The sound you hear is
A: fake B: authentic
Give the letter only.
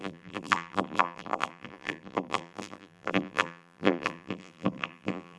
A